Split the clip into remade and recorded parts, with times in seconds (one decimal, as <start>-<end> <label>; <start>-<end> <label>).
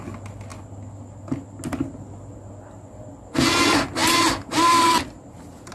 0.0-5.7 recorded